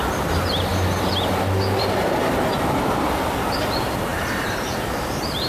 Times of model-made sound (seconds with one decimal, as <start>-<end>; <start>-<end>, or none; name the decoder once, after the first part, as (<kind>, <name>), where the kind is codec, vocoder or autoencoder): 4.1-5.5 (vocoder, BigVGAN v2)